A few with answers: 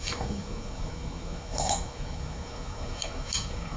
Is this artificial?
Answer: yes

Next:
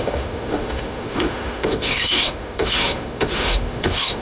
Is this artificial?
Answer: yes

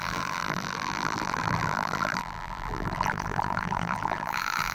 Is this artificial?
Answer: yes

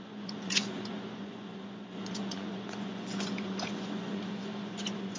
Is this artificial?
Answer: yes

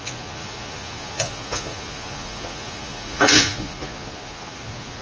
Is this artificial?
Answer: yes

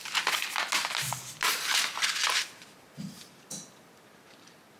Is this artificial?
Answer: no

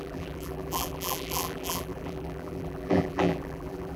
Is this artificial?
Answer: yes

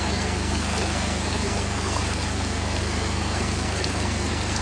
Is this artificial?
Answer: yes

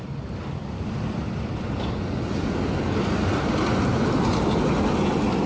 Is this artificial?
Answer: no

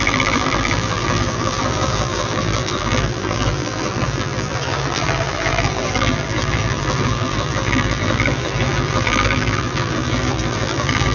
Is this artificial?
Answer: yes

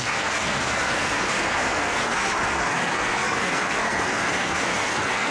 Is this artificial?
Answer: yes